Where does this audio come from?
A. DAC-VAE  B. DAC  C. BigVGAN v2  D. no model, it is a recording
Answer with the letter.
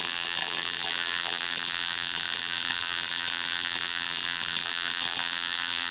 C